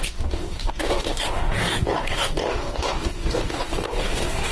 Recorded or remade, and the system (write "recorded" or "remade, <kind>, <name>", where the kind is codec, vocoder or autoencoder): remade, codec, DAC